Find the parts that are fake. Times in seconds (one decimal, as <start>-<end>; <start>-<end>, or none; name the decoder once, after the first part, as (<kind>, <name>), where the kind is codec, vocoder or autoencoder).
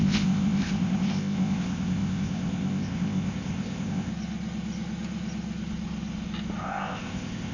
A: 0.0-4.1 (codec, ZipCodec); 6.6-7.5